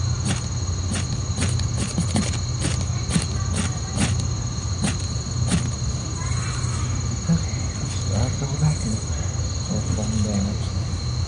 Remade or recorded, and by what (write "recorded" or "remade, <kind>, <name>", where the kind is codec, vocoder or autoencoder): recorded